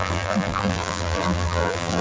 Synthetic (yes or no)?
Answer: yes